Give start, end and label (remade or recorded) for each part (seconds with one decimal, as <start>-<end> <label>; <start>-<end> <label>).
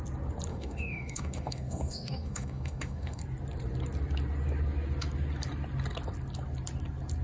0.0-0.5 recorded; 0.5-3.2 remade; 3.2-7.2 recorded